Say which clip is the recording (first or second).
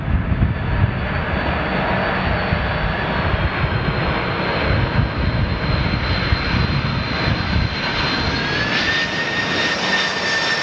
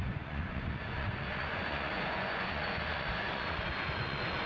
first